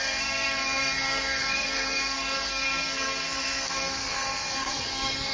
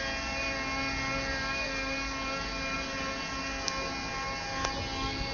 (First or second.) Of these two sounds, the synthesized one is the first